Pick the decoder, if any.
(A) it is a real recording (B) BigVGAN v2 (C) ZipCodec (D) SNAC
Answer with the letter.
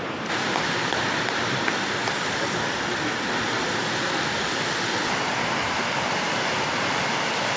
A